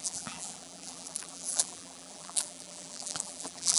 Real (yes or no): no